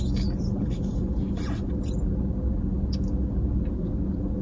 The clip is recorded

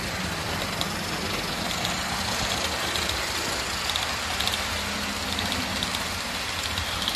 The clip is recorded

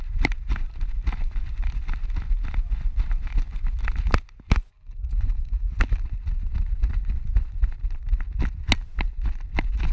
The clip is recorded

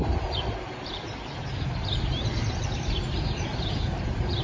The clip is remade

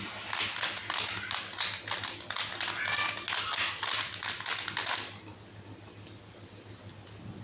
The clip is recorded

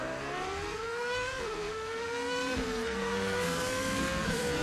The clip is remade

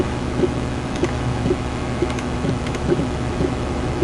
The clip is remade